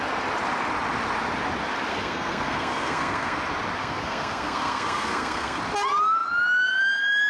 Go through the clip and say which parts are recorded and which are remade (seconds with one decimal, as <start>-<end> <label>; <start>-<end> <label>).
0.0-1.9 recorded; 1.9-3.4 remade; 3.4-3.8 recorded; 3.8-5.6 remade; 5.6-7.3 recorded

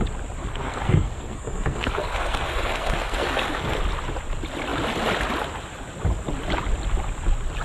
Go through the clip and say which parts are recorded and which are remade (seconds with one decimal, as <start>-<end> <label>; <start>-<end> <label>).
0.0-0.4 recorded; 0.4-3.8 remade; 3.8-7.6 recorded

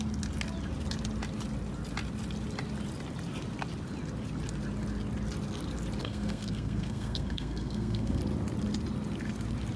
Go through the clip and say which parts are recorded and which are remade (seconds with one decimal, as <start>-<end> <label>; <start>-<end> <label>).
0.0-6.0 recorded; 6.0-8.2 remade; 8.2-9.8 recorded